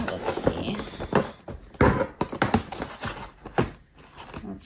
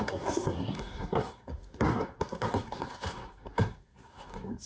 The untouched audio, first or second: first